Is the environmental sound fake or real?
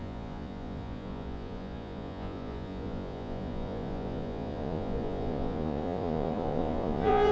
fake